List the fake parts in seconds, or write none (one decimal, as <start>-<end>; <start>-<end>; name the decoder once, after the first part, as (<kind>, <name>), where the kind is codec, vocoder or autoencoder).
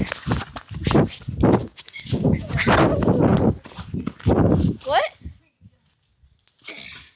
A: 1.6-2.5 (codec, DAC)